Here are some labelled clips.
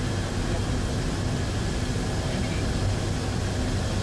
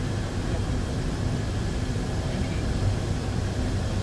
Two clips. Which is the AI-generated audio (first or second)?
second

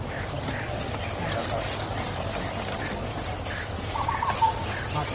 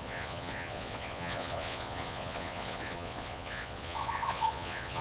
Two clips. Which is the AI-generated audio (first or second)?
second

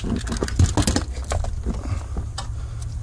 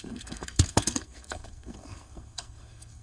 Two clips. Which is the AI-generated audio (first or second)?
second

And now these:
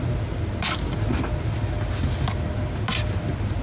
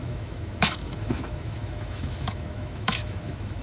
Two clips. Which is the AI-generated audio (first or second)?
second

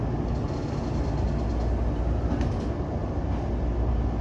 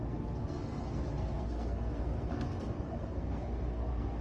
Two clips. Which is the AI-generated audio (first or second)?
second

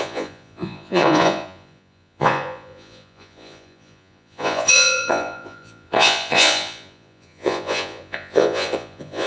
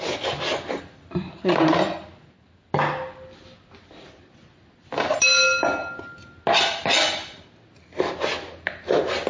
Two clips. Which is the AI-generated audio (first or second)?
first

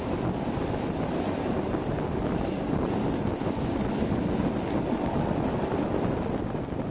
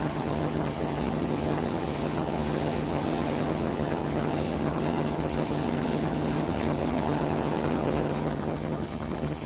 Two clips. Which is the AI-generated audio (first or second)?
second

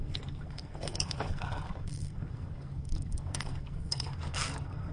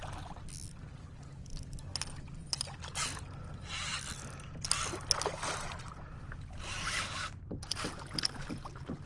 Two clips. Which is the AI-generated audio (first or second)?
first